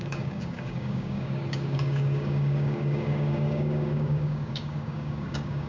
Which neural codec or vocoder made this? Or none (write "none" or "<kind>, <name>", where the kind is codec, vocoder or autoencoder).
codec, DAC